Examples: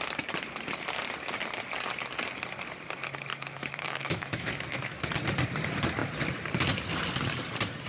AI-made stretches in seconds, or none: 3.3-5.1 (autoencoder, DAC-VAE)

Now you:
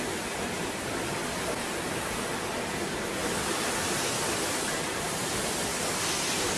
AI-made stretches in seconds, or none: none